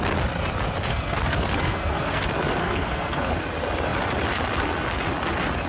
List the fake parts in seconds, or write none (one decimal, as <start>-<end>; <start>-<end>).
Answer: 0.9-2.2; 2.6-3.3